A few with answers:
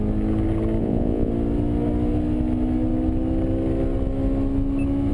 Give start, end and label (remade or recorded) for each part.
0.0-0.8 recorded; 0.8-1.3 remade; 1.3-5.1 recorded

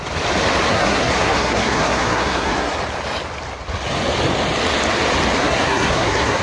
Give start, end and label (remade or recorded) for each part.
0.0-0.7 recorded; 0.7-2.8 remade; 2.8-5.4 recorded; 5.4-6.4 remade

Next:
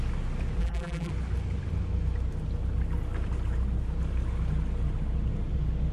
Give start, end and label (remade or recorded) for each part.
0.0-0.6 recorded; 0.6-1.1 remade; 1.1-5.9 recorded